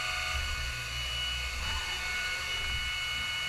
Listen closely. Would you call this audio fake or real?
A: real